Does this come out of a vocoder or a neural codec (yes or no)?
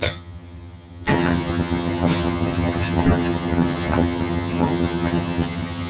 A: yes